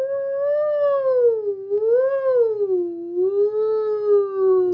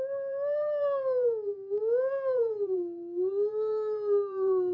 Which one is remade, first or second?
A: second